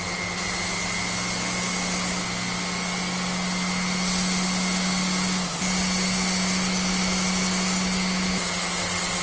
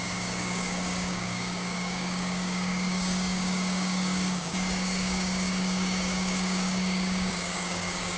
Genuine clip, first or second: first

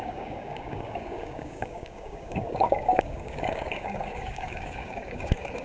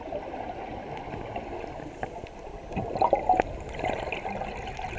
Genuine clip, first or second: second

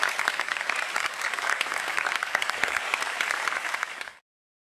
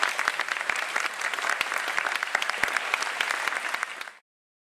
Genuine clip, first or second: second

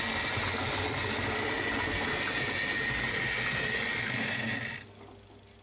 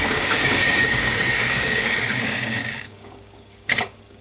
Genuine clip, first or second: first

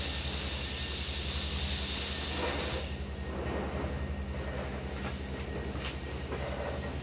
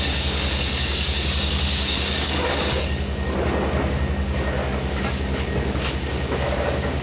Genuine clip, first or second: first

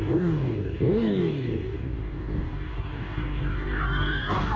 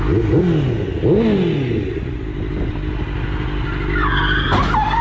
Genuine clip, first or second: second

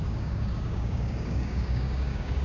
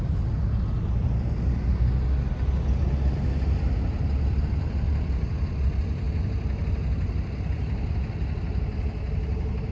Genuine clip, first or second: second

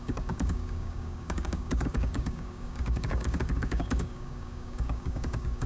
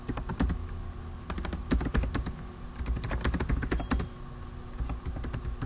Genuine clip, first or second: second